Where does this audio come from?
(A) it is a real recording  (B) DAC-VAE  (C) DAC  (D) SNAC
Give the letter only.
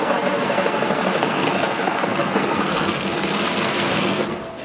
D